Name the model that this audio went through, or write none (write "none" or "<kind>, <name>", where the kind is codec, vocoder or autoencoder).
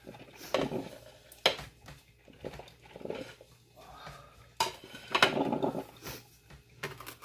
none